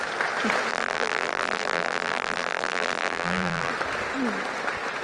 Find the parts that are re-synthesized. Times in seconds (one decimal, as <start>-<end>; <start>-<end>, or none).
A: 0.7-3.7